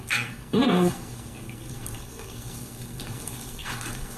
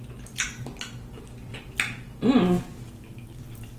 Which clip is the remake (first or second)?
first